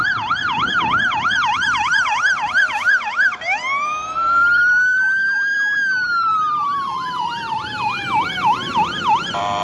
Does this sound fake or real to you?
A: fake